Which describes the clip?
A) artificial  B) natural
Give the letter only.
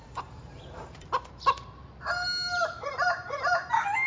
A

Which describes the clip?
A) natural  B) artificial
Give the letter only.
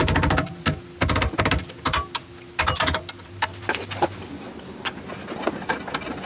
A